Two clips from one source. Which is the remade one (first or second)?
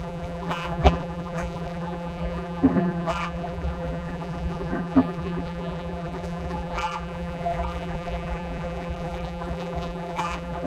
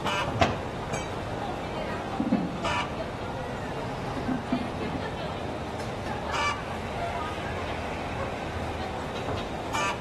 first